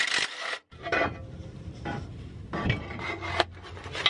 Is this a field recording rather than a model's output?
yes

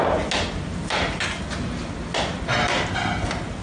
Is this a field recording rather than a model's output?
yes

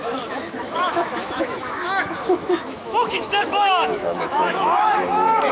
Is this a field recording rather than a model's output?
no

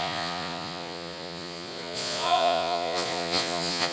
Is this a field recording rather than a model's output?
no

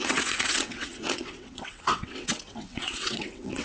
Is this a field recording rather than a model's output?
no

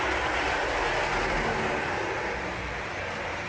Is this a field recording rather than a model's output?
yes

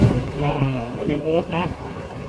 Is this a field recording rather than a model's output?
no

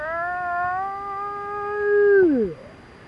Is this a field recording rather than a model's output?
yes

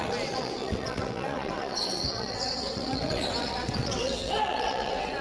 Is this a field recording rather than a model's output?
no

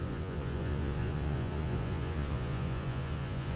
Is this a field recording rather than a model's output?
no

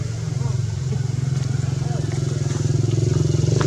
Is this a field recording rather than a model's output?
yes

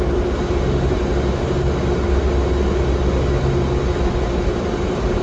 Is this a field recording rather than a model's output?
yes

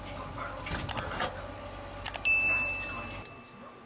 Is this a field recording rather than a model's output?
yes